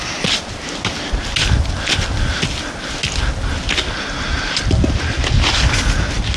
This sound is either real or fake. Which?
real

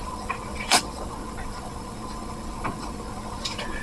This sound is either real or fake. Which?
fake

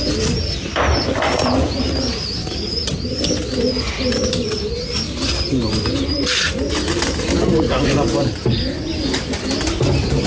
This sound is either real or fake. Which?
real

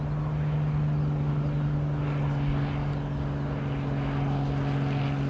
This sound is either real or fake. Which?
real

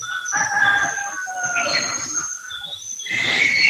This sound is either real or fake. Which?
real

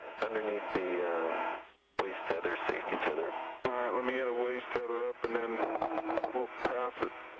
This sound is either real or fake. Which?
fake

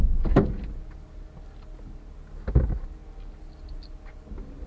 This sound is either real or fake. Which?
real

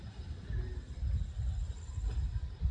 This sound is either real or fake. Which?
real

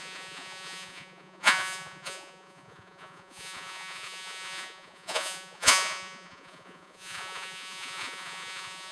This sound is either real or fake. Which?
fake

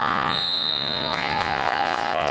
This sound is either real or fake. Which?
fake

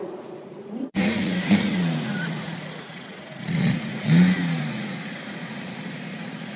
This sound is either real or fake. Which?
fake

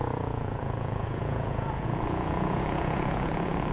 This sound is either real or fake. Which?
fake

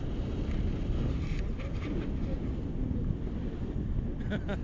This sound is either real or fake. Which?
real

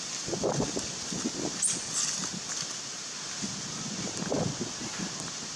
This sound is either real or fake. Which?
real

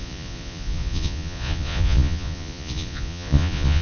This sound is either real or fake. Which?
fake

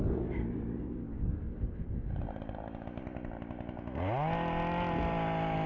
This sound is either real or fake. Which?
real